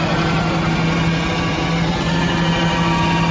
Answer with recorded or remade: recorded